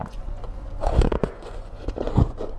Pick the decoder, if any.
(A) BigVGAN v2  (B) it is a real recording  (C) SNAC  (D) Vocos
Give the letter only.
D